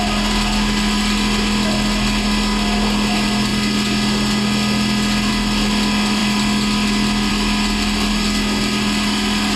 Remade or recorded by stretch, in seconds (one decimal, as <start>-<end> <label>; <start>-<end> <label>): 0.0-9.6 recorded